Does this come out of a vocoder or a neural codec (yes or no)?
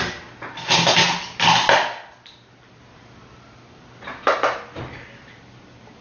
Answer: no